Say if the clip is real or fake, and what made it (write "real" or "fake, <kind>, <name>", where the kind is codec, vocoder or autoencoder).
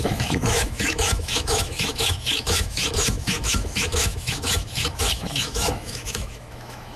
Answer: fake, autoencoder, DAC-VAE